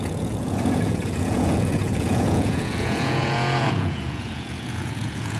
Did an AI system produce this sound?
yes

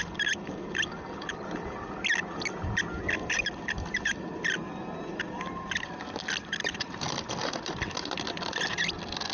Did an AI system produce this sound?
no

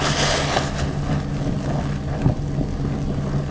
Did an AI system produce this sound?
no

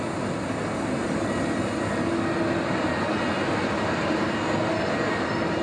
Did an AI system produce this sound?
no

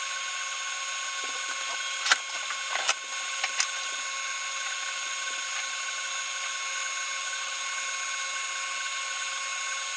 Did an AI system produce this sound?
no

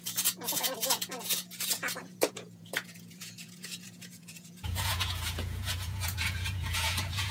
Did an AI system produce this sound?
yes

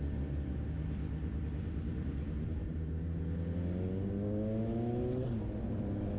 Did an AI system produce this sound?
no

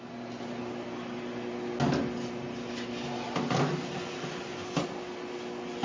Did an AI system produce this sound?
no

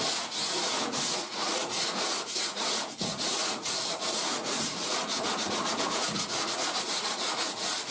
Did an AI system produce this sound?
yes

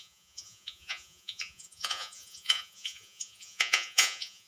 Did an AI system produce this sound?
yes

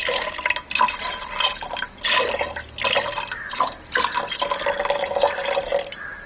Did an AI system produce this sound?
no